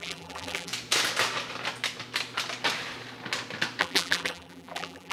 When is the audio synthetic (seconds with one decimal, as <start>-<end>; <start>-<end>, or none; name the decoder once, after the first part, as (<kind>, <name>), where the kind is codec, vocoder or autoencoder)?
0.0-0.7 (vocoder, BigVGAN v2); 3.8-5.1